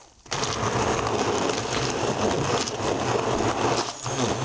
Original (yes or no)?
no